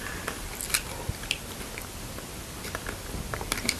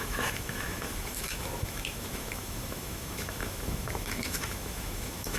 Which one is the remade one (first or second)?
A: second